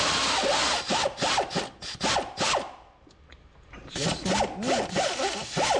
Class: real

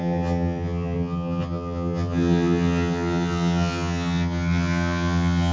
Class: fake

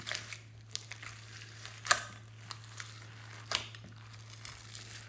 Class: real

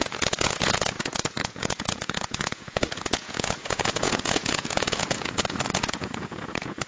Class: fake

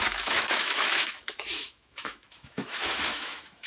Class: fake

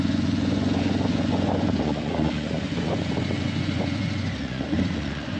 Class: fake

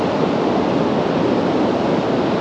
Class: real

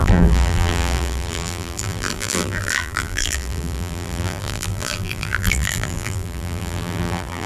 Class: fake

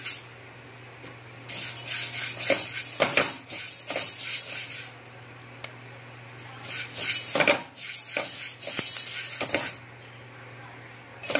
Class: real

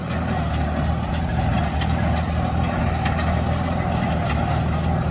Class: real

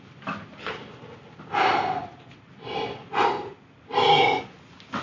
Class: real